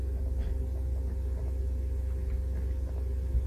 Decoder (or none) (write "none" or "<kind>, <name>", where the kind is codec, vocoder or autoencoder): none